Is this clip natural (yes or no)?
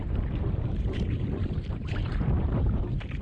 no